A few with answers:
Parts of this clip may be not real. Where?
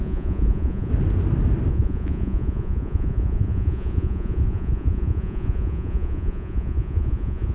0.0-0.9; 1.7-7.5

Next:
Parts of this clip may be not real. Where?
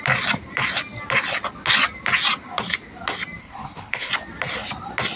3.4-4.1